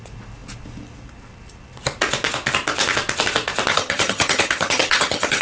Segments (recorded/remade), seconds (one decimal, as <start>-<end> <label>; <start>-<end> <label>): 0.0-3.7 recorded; 3.7-5.4 remade